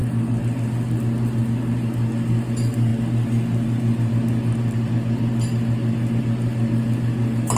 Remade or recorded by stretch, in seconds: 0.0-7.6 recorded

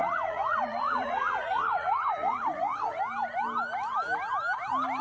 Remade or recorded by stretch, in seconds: 0.0-3.0 remade; 3.0-5.0 recorded

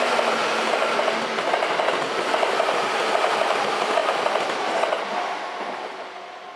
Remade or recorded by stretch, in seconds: 0.0-6.6 recorded

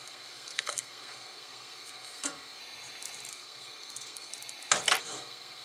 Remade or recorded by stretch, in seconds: 0.0-2.6 remade; 2.6-3.3 recorded; 3.3-4.3 remade; 4.3-5.0 recorded; 5.0-5.6 remade

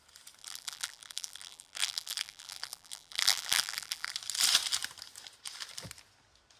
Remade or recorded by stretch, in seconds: 0.0-0.4 recorded; 0.4-4.1 remade; 4.1-6.6 recorded

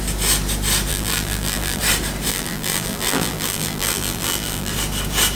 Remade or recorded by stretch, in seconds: 0.0-0.9 recorded; 0.9-1.8 remade; 1.8-2.3 recorded; 2.3-4.7 remade; 4.7-5.4 recorded